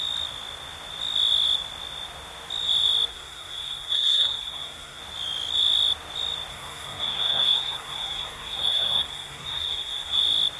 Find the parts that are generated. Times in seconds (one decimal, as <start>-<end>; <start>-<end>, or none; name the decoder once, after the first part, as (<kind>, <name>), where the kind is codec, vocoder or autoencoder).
3.1-5.0 (codec, SNAC); 6.5-10.2